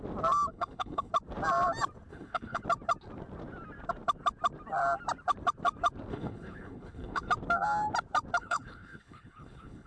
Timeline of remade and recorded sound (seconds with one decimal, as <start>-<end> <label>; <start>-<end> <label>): 0.0-0.5 recorded; 0.5-1.1 remade; 1.1-2.1 recorded; 2.1-2.6 remade; 2.6-6.1 recorded; 6.1-7.3 remade; 7.3-8.4 recorded; 8.4-9.9 remade